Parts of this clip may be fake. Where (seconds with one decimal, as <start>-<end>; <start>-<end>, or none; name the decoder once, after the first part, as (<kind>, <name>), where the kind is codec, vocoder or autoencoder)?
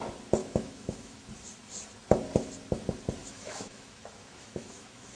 0.4-1.3 (autoencoder, DAC-VAE); 3.2-5.2